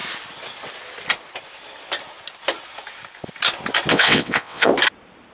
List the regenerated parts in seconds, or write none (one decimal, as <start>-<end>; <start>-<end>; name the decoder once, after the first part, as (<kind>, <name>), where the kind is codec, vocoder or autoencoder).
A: 3.9-4.7 (vocoder, WaveNeXt)